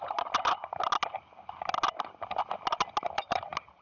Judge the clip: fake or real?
real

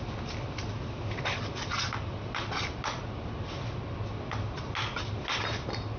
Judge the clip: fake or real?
real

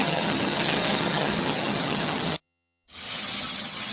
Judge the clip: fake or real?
fake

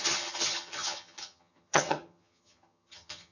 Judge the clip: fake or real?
fake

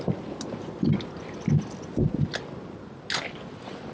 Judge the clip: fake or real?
real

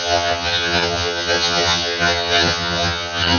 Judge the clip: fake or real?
fake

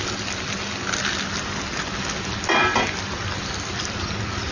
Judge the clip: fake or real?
real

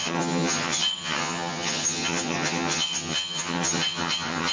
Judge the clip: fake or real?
fake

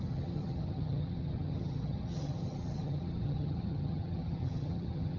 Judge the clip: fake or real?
fake